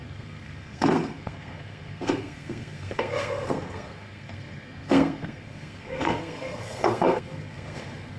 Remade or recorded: remade